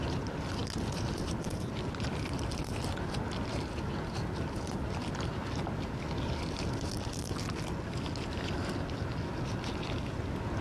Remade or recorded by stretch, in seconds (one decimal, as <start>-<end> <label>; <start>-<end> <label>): 0.0-10.6 recorded